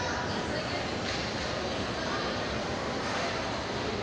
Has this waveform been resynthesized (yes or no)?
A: no